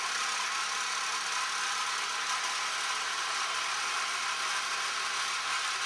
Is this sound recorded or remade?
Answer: recorded